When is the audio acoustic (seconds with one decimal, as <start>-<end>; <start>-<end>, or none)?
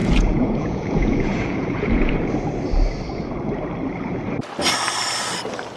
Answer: 2.1-5.8